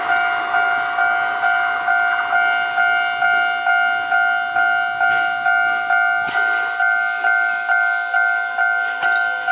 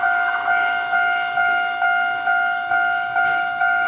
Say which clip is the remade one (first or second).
second